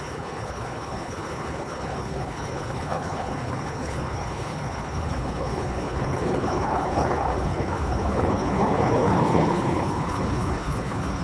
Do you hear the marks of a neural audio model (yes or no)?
yes